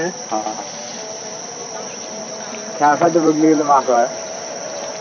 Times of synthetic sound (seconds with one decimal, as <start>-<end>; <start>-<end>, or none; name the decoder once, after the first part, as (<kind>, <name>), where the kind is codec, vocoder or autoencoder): 2.9-5.0 (vocoder, BigVGAN v2)

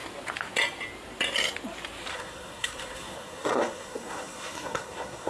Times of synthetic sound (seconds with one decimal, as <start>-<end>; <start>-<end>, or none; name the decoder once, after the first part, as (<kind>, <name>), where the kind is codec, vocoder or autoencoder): 2.1-5.3 (codec, SNAC)

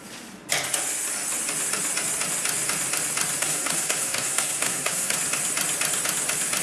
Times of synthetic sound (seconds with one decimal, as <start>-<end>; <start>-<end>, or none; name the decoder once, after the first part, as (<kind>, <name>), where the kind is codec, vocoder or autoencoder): 3.4-5.2 (codec, SNAC)

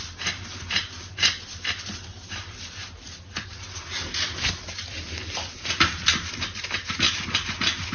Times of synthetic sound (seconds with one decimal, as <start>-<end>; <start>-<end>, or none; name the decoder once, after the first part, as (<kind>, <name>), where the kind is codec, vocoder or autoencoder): none

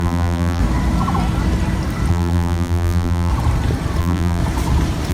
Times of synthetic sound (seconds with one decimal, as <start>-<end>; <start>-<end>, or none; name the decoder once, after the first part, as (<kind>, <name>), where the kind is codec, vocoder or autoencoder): 0.0-0.6 (vocoder, BigVGAN v2); 2.1-3.3; 4.0-4.4

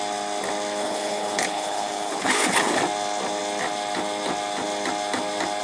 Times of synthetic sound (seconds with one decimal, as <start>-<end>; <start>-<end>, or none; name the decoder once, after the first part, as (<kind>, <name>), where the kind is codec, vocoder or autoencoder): 0.8-2.8 (codec, HILCodec)

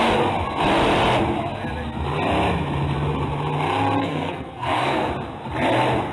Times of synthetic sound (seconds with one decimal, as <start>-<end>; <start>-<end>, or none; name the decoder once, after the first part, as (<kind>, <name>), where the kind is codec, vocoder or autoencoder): 4.0-5.1 (codec, SNAC)

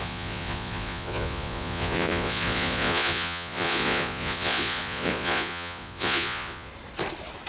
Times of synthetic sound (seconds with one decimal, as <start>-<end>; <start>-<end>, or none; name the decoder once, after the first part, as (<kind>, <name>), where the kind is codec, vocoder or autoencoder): 0.0-6.7 (vocoder, Vocos)